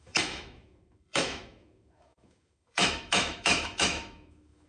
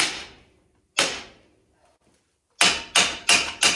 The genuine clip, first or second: second